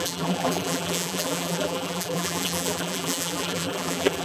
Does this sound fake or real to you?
fake